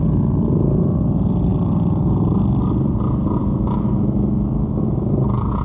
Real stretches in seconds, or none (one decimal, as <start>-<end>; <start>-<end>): 0.0-3.4; 5.1-5.6